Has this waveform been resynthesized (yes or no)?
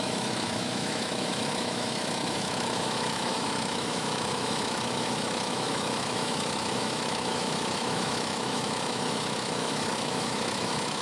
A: yes